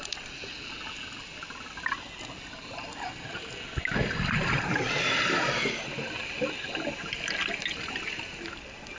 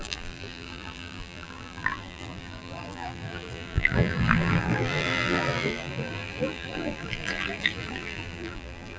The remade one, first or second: second